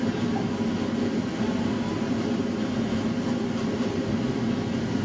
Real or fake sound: real